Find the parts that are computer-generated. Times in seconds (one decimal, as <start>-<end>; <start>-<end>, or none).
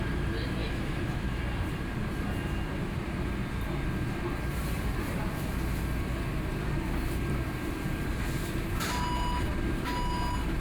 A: 0.6-1.4